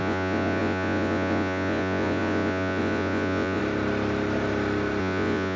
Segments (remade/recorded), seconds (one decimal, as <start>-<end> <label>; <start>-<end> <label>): 0.0-3.6 remade; 3.6-5.0 recorded; 5.0-5.6 remade